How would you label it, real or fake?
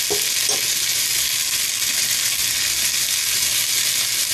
real